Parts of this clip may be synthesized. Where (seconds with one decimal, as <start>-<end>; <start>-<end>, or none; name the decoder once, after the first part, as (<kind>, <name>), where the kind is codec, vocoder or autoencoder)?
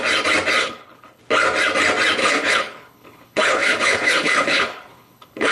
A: 0.6-1.2 (codec, HILCodec); 2.2-5.5